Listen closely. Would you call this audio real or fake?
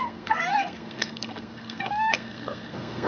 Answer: fake